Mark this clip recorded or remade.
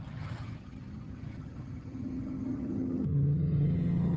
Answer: remade